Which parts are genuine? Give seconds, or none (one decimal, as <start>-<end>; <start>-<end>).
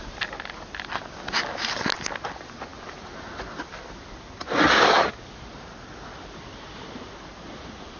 0.0-2.7; 3.9-8.0